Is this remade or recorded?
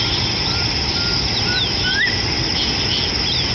recorded